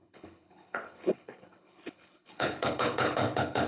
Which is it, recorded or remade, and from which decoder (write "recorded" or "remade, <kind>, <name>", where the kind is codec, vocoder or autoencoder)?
remade, codec, HILCodec